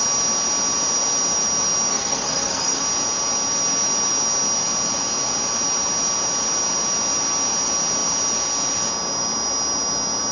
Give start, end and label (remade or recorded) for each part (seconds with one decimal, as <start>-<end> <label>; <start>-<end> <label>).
0.0-1.9 recorded; 1.9-2.8 remade; 2.8-10.3 recorded